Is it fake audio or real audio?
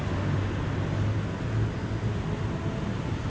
real